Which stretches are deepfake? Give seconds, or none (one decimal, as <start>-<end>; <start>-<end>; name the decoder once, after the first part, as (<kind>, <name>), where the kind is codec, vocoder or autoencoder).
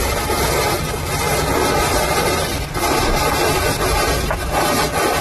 none